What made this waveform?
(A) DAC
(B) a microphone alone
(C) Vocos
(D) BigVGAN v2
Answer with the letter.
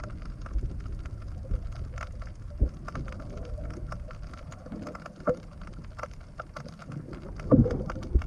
B